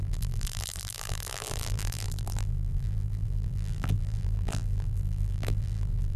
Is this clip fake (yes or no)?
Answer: yes